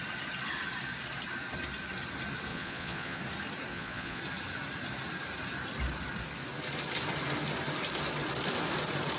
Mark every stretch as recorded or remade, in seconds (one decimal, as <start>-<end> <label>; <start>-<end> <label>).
0.0-2.5 recorded; 2.5-3.2 remade; 3.2-3.7 recorded; 3.7-4.2 remade; 4.2-9.2 recorded